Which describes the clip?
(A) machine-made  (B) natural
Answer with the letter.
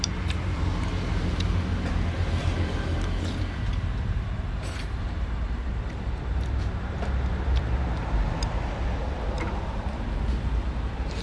A